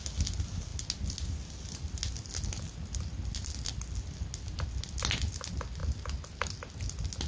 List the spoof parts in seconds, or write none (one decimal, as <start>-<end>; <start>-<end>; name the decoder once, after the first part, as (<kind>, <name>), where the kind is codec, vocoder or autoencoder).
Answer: none